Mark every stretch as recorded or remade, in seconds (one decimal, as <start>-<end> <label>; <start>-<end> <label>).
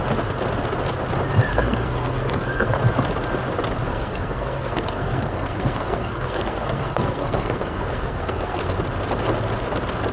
0.0-1.5 recorded; 1.5-2.7 remade; 2.7-3.9 recorded; 3.9-8.8 remade; 8.8-10.1 recorded